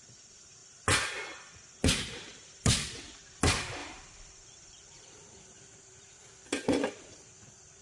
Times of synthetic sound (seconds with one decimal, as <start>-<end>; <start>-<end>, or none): 0.6-1.5; 2.3-3.2; 3.8-7.3